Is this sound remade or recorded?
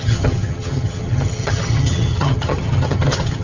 remade